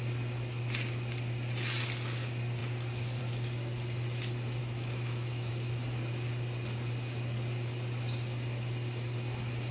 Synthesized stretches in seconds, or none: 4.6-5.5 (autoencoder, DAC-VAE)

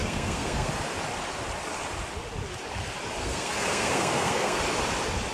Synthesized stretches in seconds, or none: 0.0-0.7 (codec, SNAC); 3.2-4.6

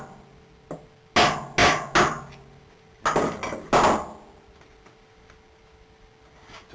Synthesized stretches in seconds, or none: none

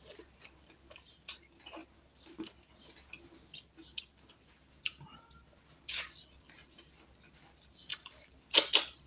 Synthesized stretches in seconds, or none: none

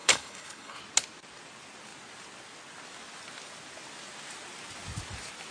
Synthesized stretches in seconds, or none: 0.0-0.8 (codec, HILCodec)